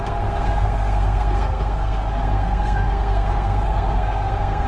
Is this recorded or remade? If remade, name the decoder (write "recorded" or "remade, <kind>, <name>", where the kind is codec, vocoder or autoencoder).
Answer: remade, codec, SNAC